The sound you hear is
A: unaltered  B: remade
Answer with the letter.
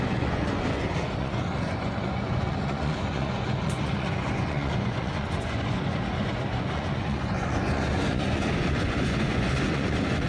B